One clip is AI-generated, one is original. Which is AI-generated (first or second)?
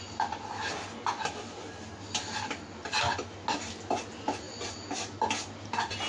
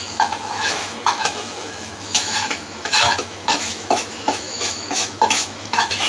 second